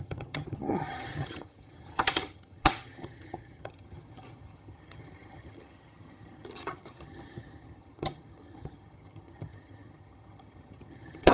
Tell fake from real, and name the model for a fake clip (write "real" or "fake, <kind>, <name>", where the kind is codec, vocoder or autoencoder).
fake, vocoder, HiFi-GAN